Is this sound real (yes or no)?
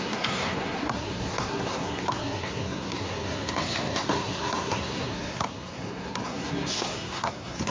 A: no